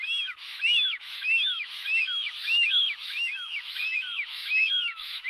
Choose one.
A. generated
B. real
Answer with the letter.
A